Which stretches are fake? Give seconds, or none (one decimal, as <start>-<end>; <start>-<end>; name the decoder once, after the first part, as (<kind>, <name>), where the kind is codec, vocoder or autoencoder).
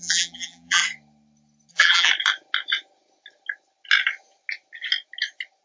0.0-0.8 (vocoder, BigVGAN v2); 1.7-2.1